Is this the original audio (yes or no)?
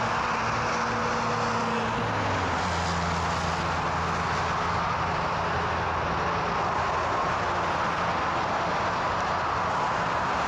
yes